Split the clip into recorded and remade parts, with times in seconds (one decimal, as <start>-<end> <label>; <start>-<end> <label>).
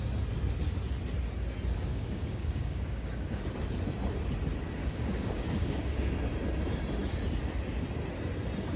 0.0-1.9 recorded; 1.9-3.4 remade; 3.4-4.8 recorded; 4.8-6.1 remade; 6.1-8.8 recorded